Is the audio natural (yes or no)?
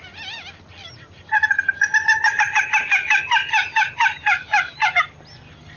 yes